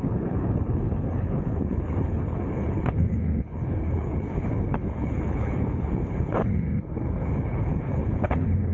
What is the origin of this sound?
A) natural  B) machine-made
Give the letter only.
B